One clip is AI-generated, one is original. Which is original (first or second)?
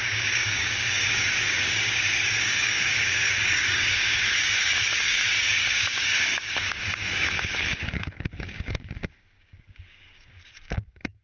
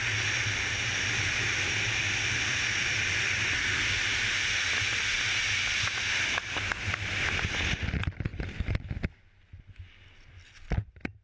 second